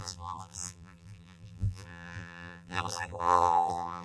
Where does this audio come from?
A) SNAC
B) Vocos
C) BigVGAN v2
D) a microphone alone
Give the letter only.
C